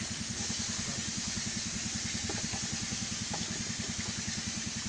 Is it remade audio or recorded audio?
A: recorded